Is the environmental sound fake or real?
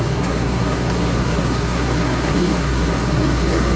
fake